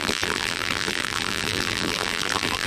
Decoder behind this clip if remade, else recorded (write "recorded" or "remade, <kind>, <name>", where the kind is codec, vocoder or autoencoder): remade, vocoder, BigVGAN v2